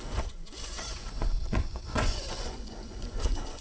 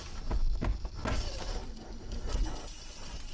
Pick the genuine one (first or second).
second